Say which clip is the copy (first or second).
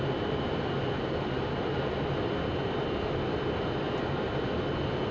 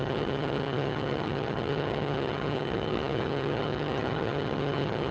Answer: second